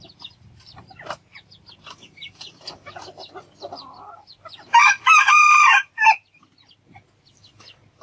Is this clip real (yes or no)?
yes